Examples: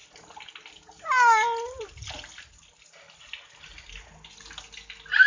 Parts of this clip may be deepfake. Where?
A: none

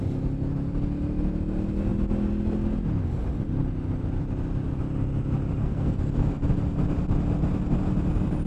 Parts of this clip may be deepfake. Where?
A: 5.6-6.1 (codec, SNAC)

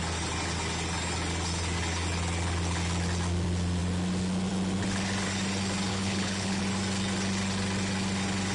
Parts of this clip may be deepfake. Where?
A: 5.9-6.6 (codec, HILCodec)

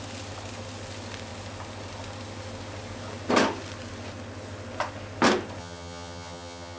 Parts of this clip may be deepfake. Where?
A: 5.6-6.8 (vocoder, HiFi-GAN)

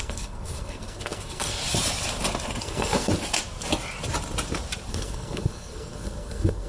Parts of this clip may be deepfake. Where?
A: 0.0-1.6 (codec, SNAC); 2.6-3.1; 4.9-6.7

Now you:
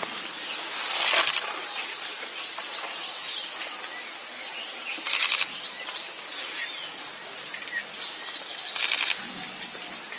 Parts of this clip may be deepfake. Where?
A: 1.6-2.6 (vocoder, BigVGAN v2); 6.6-7.3